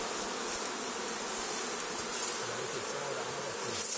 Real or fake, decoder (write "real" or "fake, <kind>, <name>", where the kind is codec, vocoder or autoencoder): real